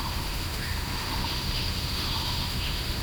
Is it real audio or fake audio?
fake